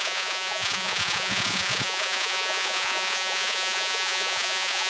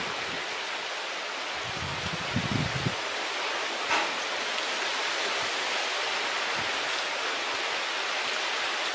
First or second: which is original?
second